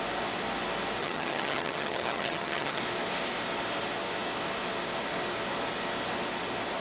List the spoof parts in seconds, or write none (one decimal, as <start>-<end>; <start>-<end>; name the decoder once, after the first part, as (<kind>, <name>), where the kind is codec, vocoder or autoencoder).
1.0-2.8 (vocoder, HiFi-GAN)